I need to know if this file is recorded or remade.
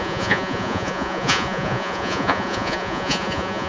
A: remade